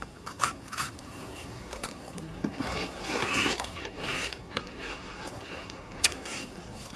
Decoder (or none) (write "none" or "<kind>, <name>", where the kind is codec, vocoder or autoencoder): codec, SNAC